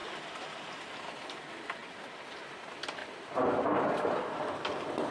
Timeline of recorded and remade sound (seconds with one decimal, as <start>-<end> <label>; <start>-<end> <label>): 0.0-5.1 recorded